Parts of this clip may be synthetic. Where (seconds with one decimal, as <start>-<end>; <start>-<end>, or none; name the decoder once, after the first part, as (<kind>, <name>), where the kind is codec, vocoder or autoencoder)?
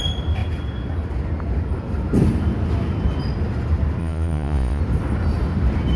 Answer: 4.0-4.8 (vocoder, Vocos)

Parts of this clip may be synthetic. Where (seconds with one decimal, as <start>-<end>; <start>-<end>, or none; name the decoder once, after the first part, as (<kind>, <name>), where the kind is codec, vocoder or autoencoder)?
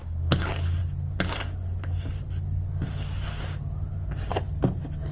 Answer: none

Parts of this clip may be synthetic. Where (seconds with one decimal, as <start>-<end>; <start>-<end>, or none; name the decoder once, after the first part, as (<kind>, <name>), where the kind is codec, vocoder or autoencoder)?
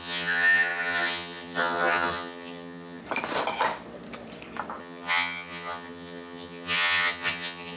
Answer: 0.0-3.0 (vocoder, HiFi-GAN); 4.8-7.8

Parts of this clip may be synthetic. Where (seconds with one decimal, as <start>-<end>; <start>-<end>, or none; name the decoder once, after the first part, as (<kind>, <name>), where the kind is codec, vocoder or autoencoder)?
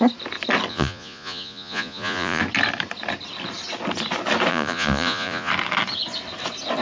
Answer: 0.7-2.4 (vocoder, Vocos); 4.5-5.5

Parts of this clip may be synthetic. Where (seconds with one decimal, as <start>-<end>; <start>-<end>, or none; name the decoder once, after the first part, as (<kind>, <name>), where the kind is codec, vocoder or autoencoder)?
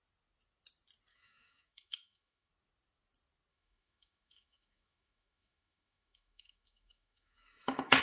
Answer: 1.1-2.5 (autoencoder, DAC-VAE); 3.5-8.0